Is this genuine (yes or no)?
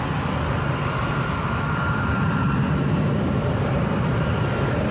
yes